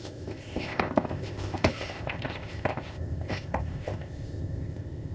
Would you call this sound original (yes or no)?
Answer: no